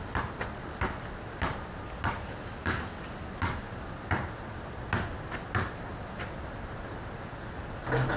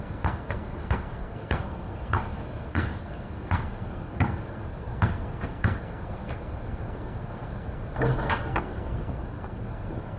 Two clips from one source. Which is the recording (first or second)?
first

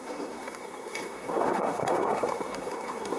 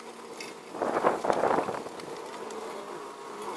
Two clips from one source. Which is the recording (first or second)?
second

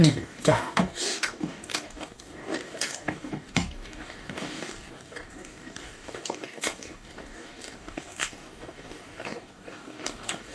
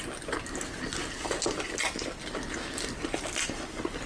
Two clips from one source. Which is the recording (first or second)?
second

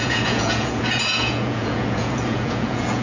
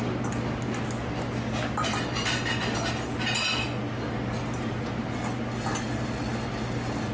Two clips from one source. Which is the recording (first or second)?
second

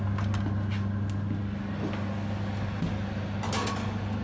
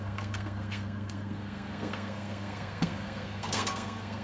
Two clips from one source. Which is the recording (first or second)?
first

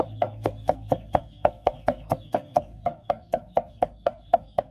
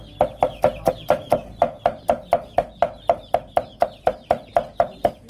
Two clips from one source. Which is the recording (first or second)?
second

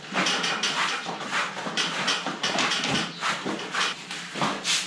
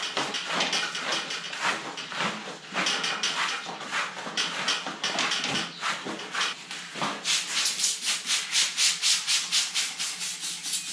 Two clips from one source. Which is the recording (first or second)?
second